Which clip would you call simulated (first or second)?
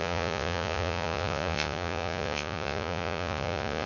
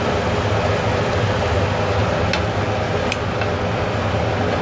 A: first